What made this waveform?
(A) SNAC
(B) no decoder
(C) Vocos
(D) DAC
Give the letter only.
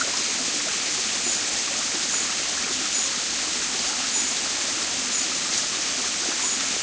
B